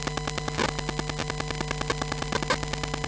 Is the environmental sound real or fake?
real